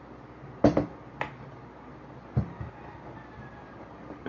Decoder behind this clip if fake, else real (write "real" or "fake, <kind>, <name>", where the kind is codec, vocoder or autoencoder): real